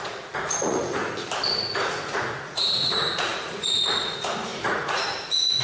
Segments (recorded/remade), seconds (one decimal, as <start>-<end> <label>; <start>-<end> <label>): 0.0-1.0 remade; 1.0-1.8 recorded; 1.8-5.6 remade